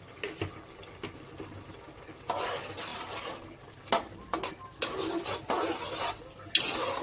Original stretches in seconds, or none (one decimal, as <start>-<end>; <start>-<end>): 0.0-7.0